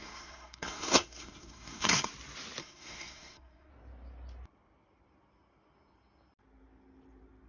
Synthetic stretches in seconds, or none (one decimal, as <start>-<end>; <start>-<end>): 0.0-2.1; 2.6-3.7